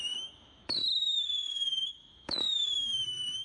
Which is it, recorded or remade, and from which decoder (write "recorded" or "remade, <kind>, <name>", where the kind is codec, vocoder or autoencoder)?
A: remade, autoencoder, DAC-VAE